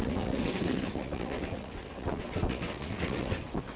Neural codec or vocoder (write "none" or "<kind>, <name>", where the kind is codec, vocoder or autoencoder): vocoder, WaveNeXt